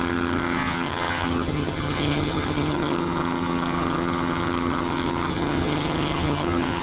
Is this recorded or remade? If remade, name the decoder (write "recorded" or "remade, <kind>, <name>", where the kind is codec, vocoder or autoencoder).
remade, vocoder, HiFi-GAN